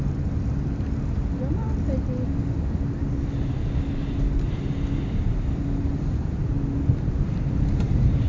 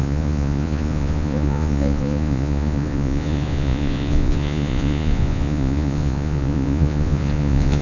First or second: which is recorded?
first